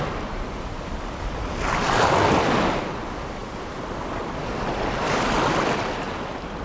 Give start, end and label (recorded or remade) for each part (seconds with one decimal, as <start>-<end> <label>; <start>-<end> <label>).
0.0-6.6 recorded

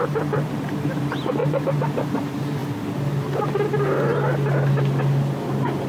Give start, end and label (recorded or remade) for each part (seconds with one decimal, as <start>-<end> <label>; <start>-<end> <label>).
0.0-2.6 remade; 2.6-5.9 recorded

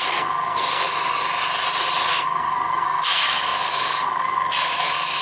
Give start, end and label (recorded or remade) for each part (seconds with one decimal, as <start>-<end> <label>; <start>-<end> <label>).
0.0-1.2 remade; 1.2-2.1 recorded; 2.1-5.2 remade

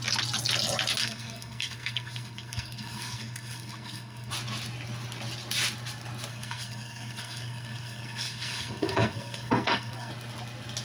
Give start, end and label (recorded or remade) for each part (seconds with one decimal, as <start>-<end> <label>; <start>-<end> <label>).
0.0-1.0 recorded; 1.0-4.3 remade; 4.3-6.3 recorded; 6.3-10.1 remade; 10.1-10.8 recorded